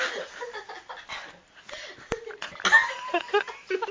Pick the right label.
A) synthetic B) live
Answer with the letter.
B